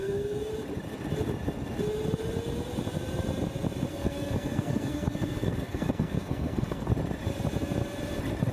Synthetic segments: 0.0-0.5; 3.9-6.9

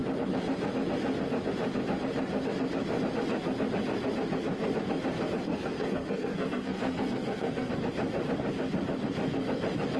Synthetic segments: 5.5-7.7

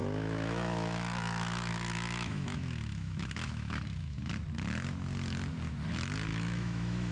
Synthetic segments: 0.0-4.3; 6.3-7.1